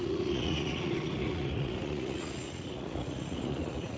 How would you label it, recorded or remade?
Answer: remade